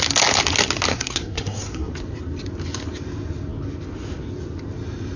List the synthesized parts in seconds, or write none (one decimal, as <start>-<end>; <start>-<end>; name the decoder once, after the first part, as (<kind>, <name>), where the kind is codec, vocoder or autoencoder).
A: 0.9-1.9 (codec, SNAC)